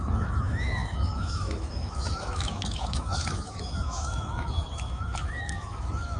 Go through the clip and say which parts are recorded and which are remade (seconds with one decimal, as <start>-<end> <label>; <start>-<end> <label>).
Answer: 0.0-6.2 remade